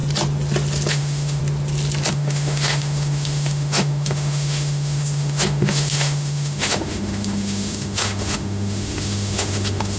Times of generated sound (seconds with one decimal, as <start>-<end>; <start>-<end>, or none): 0.9-1.4; 2.1-10.0